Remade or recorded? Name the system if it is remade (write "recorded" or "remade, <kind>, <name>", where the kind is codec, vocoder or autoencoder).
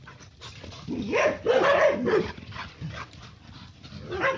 recorded